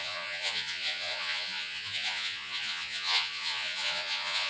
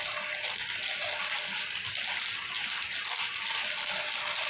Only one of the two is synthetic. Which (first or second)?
first